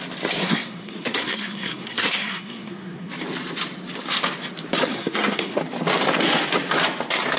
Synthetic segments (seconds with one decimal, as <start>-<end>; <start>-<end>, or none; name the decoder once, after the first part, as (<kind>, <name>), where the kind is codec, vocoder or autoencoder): 0.4-3.1 (codec, SNAC); 4.9-5.6